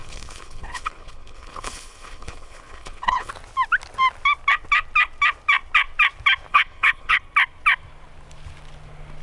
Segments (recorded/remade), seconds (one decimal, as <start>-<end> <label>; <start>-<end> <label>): 0.0-3.3 remade; 3.3-6.5 recorded; 6.5-7.2 remade; 7.2-9.2 recorded